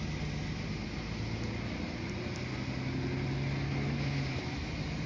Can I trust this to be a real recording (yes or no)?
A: yes